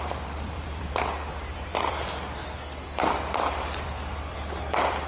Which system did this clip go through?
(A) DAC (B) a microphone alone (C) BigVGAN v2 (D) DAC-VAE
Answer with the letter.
C